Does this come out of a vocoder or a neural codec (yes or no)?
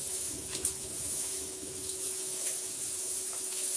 yes